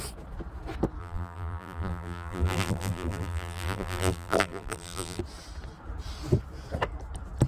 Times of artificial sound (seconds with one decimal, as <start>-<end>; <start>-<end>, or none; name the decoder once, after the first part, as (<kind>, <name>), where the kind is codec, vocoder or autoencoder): 1.0-5.2 (vocoder, BigVGAN v2)